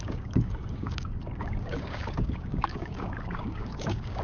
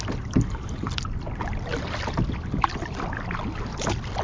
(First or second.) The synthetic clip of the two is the first